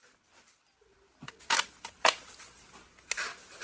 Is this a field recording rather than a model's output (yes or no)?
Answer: yes